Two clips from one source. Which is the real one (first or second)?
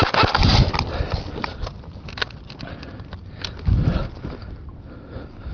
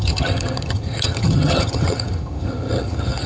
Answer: first